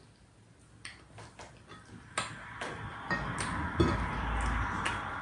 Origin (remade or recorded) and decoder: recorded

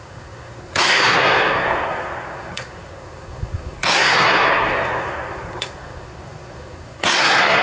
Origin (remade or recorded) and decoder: remade, codec, SNAC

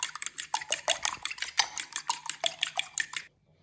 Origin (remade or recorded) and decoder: recorded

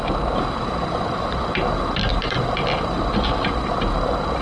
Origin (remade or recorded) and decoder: recorded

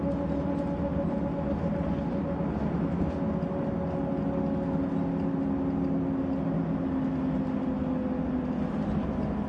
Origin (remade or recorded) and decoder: recorded